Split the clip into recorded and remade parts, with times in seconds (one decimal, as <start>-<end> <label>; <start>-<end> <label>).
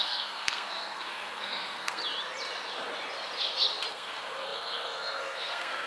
0.0-2.0 remade; 2.0-3.9 recorded; 3.9-5.9 remade